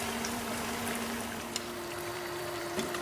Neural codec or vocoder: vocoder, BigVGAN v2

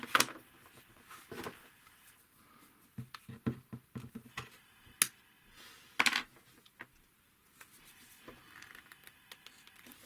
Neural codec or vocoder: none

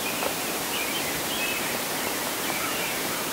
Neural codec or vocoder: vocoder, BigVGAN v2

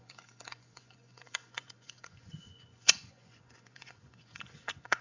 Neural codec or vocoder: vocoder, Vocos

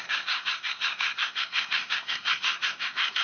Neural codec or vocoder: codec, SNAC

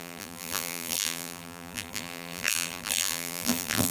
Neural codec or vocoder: vocoder, BigVGAN v2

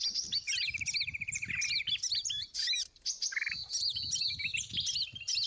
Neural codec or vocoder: none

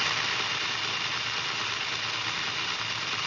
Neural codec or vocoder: none